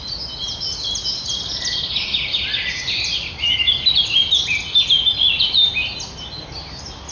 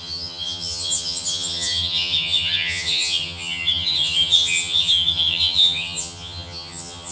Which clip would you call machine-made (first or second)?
second